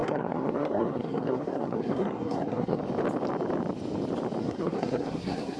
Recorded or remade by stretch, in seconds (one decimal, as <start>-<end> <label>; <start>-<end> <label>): 0.0-2.8 remade; 2.8-4.4 recorded; 4.4-5.6 remade